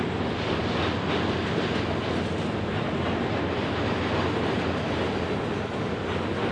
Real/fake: real